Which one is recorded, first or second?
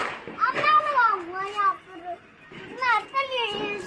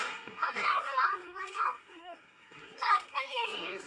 first